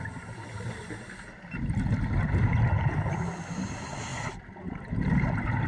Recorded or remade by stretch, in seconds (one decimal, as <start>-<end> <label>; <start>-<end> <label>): 0.0-5.7 recorded

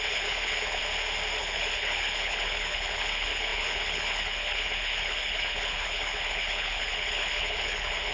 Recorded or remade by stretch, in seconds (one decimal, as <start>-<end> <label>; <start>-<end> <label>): 0.0-0.8 remade; 0.8-1.4 recorded; 1.4-8.1 remade

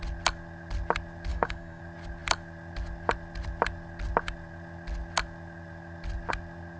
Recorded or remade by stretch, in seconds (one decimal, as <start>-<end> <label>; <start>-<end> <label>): 0.0-1.3 recorded; 1.3-1.8 remade; 1.8-6.8 recorded

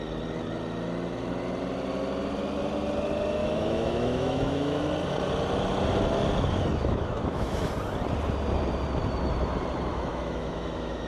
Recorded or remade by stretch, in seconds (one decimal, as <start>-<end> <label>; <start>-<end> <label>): 0.0-3.4 recorded; 3.4-4.8 remade; 4.8-6.7 recorded; 6.7-7.7 remade; 7.7-9.9 recorded; 9.9-11.1 remade